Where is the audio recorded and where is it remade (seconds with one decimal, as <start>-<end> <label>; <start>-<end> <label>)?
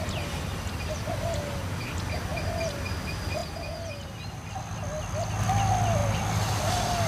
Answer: 0.0-7.1 recorded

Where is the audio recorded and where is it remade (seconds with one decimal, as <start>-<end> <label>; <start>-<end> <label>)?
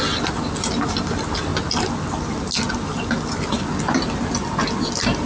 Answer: 0.0-5.3 recorded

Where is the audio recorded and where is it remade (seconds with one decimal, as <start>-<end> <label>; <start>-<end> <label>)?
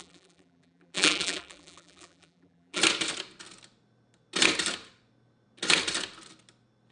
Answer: 0.0-2.8 remade; 2.8-6.9 recorded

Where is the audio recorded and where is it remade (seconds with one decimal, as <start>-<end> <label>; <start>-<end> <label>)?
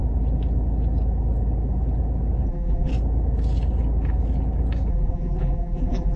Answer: 0.0-2.5 recorded; 2.5-2.9 remade; 2.9-4.9 recorded; 4.9-6.2 remade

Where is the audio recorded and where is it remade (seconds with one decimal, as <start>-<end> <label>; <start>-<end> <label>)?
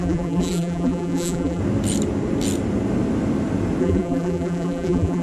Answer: 0.0-1.6 remade; 1.6-3.8 recorded; 3.8-5.2 remade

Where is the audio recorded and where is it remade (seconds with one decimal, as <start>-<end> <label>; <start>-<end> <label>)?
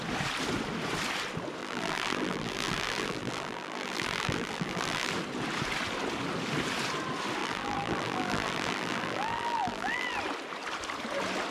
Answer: 0.0-1.6 recorded; 1.6-5.1 remade; 5.1-7.4 recorded; 7.4-10.2 remade; 10.2-11.5 recorded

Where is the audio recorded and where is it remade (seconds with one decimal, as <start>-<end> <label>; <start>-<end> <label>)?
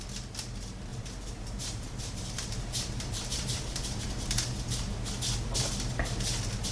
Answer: 0.0-0.9 recorded; 0.9-4.9 remade; 4.9-6.7 recorded